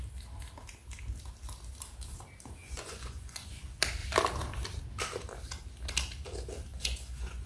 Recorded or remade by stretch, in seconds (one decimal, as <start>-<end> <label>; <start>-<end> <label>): 0.0-2.6 recorded; 2.6-3.6 remade; 3.6-6.7 recorded; 6.7-7.5 remade